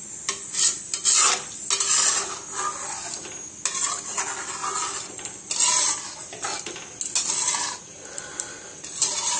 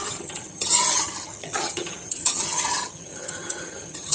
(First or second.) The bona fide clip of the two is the first